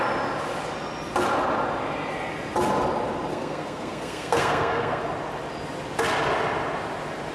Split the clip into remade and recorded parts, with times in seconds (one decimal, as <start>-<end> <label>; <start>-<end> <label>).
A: 0.0-3.3 recorded; 3.3-5.0 remade; 5.0-7.3 recorded